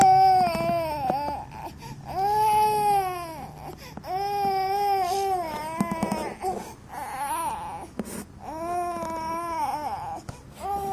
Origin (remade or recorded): recorded